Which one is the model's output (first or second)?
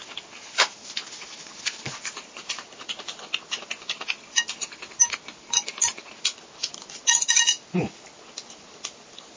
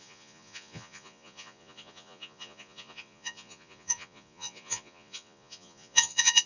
second